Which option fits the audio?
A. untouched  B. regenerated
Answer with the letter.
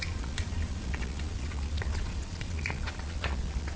B